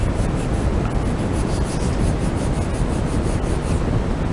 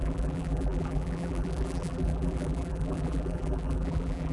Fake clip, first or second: second